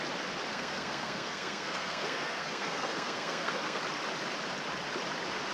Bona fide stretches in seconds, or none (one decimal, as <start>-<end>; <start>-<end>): 0.0-0.5; 3.8-5.5